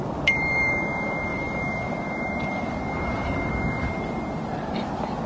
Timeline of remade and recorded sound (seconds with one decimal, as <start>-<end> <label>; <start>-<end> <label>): 0.0-0.8 remade; 0.8-1.3 recorded; 1.3-3.5 remade; 3.5-5.3 recorded

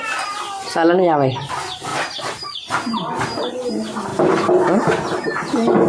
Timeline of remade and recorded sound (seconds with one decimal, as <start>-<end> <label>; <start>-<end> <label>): 0.0-1.9 recorded; 1.9-3.5 remade; 3.5-5.9 recorded

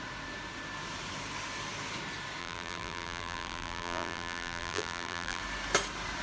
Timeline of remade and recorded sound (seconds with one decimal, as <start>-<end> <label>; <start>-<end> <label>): 0.0-2.4 recorded; 2.4-5.4 remade; 5.4-6.2 recorded